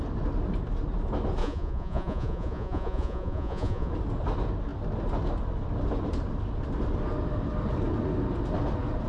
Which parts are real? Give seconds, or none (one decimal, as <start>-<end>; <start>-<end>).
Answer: 0.0-1.4; 3.9-9.1